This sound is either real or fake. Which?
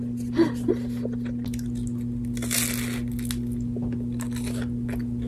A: real